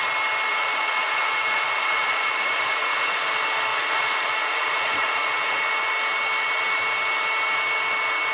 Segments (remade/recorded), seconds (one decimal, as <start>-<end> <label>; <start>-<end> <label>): 0.0-0.5 recorded; 0.5-3.2 remade; 3.2-3.7 recorded; 3.7-5.6 remade; 5.6-8.3 recorded